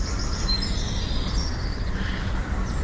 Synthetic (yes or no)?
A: no